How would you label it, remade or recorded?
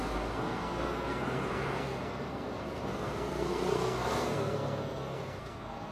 remade